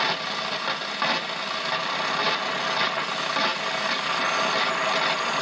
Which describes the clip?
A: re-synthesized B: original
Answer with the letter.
B